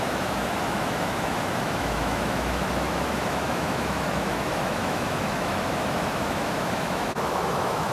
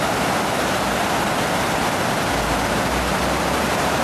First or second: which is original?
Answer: second